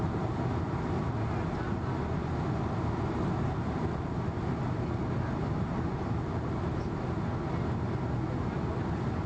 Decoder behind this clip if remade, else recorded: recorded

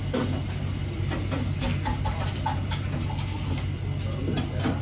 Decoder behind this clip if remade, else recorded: recorded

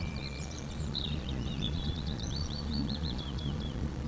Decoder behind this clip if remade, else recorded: remade, vocoder, Vocos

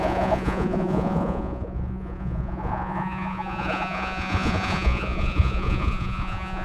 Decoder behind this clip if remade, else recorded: remade, vocoder, Vocos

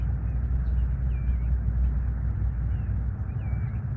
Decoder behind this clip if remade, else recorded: recorded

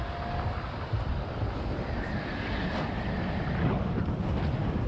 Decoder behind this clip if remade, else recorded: recorded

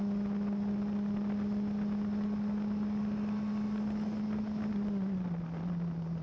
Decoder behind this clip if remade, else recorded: recorded